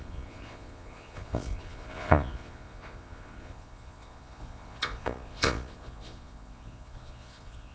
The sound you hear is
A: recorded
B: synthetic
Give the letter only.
B